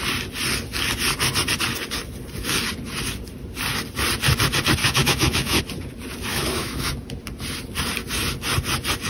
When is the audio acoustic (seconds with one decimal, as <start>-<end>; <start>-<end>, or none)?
0.0-4.8; 5.6-6.3; 6.9-9.1